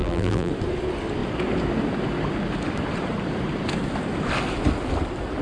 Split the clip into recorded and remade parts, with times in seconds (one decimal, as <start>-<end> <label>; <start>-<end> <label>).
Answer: 0.0-0.5 remade; 0.5-5.4 recorded